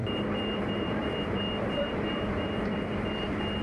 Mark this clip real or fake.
fake